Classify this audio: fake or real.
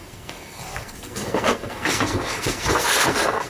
fake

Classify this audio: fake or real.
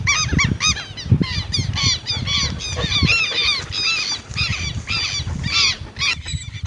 real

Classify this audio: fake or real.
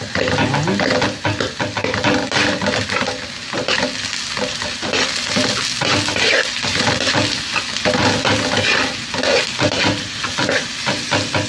real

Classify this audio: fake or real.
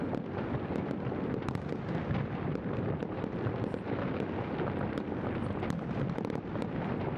real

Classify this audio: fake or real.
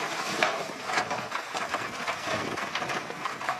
fake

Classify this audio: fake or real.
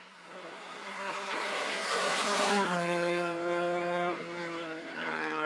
fake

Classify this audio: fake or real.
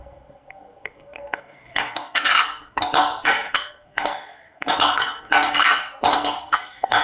fake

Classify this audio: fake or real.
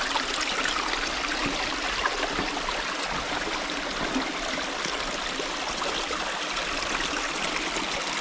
real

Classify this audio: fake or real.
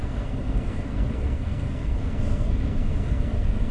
fake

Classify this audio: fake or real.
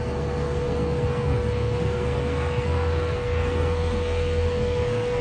fake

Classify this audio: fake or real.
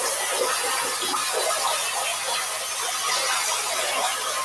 real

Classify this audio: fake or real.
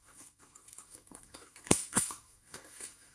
fake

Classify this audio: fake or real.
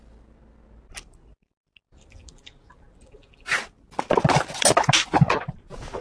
real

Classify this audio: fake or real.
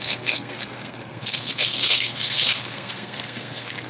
fake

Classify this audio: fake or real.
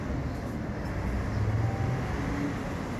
real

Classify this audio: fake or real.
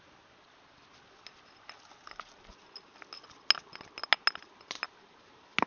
real